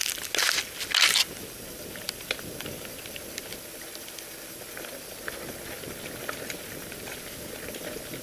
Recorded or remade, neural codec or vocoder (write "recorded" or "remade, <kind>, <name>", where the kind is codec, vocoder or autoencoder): recorded